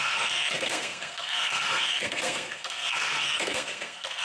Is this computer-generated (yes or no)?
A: yes